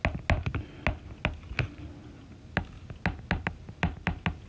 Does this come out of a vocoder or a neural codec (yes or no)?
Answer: no